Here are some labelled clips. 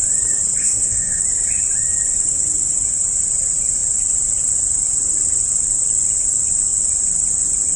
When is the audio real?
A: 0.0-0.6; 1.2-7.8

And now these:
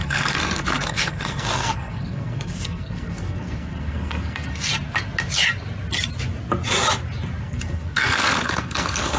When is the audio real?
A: 4.7-7.4

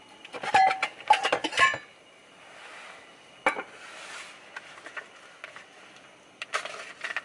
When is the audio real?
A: 0.0-7.2